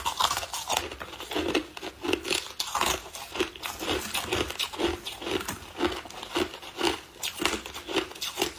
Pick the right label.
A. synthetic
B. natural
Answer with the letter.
B